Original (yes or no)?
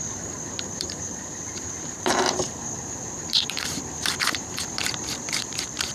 no